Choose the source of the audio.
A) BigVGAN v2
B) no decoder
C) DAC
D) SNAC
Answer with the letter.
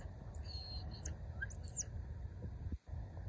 B